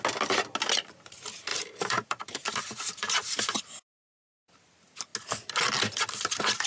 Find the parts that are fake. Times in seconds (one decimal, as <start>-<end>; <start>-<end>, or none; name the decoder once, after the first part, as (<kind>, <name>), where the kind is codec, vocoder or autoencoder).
1.5-3.6 (vocoder, BigVGAN v2)